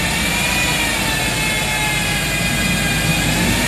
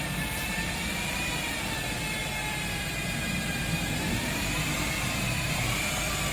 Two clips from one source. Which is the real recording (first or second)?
first